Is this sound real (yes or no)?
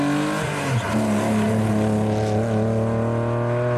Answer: yes